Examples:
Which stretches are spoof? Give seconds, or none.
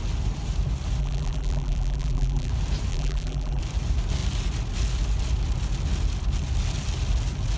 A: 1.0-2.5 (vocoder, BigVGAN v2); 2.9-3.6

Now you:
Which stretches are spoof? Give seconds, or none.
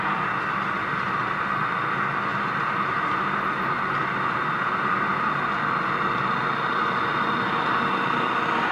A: 2.3-5.6 (vocoder, BigVGAN v2)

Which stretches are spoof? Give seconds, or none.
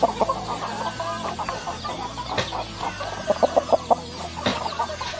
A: 4.5-5.2 (vocoder, BigVGAN v2)